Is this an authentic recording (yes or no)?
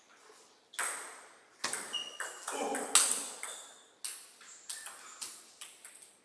yes